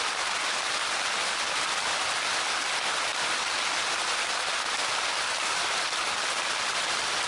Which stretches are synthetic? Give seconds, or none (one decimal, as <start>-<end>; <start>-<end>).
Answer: none